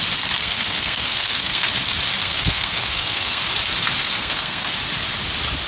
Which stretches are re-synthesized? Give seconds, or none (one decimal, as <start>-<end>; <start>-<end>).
0.4-1.7; 2.2-3.5; 4.0-4.7